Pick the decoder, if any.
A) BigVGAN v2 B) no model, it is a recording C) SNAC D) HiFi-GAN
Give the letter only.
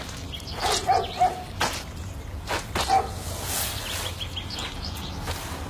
B